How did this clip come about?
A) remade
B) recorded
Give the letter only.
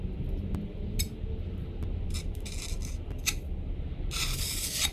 B